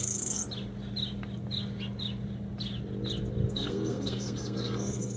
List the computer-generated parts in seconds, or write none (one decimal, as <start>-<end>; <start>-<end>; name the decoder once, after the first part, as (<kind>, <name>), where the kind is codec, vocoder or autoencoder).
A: 0.0-0.4 (codec, SNAC); 3.5-5.2